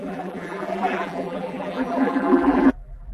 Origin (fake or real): fake